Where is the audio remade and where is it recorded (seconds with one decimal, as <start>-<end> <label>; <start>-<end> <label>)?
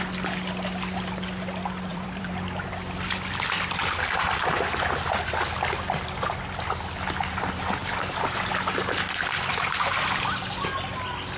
0.0-1.9 recorded; 1.9-2.7 remade; 2.7-7.8 recorded; 7.8-8.5 remade; 8.5-11.4 recorded